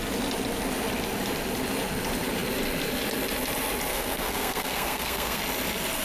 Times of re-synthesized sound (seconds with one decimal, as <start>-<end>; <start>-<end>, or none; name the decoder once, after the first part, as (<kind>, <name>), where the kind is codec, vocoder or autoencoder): 3.9-5.4 (codec, SNAC)